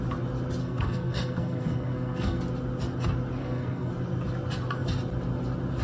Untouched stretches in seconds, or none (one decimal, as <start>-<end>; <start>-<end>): 0.0-0.6; 2.4-3.4; 3.9-5.8